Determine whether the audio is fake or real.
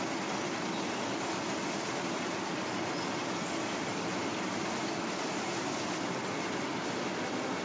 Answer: real